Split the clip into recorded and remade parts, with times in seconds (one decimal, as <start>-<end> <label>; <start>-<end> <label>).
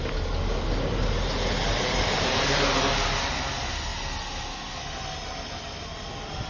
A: 0.0-6.5 recorded